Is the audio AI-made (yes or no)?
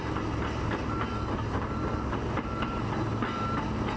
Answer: no